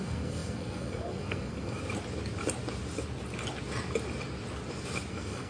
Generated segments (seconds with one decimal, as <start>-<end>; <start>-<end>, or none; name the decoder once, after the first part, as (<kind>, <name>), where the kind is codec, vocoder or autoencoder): 0.0-1.8 (codec, SNAC); 5.1-5.5